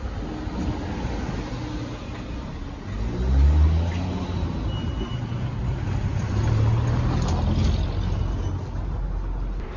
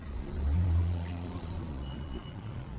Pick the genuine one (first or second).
first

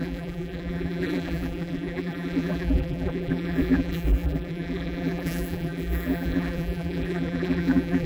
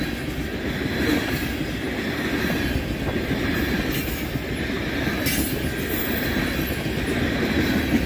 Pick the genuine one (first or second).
second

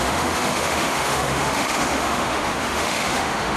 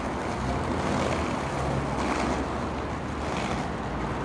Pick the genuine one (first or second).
second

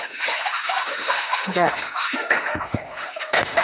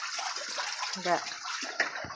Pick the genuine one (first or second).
second